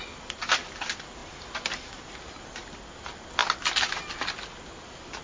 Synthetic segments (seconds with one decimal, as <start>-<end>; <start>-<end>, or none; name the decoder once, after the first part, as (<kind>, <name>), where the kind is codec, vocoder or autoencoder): none